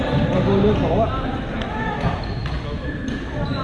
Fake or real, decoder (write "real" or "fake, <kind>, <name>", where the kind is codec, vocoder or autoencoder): real